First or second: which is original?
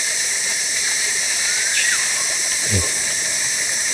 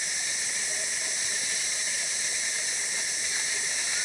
second